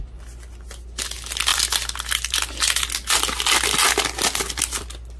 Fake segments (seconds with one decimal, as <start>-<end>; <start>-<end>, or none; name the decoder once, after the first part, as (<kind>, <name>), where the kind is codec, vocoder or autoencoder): none